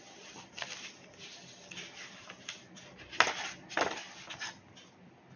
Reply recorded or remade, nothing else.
recorded